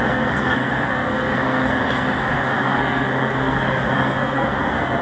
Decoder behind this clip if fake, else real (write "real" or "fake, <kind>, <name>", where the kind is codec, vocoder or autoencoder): fake, codec, SNAC